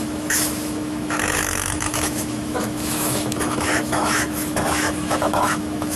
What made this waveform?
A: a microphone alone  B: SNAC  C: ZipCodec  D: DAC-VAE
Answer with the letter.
D